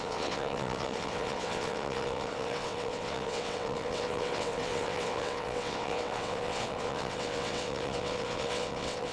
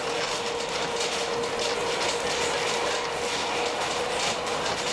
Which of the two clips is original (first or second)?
second